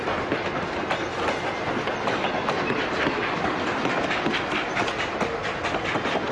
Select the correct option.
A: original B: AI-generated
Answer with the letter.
A